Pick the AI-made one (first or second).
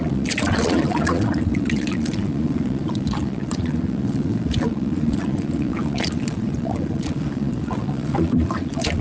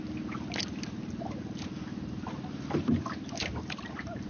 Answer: first